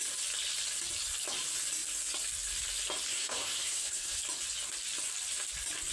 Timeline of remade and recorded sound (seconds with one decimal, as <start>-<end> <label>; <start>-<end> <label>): 0.0-3.1 recorded; 3.1-4.2 remade; 4.2-5.9 recorded